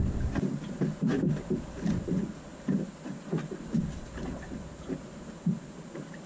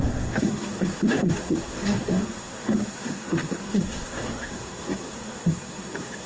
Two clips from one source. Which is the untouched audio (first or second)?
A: first